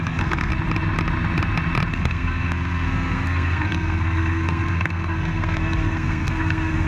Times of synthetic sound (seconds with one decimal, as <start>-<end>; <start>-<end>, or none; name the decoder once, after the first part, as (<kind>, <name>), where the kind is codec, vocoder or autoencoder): 0.0-0.5 (codec, SNAC); 1.9-6.9